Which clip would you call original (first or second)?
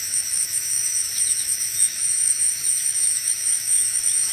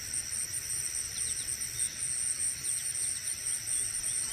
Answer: second